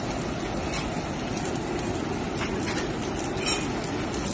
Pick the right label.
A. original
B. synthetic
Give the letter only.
A